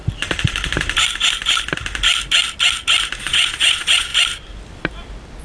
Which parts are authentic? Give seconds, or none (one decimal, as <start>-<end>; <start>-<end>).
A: 0.0-3.2; 4.1-5.4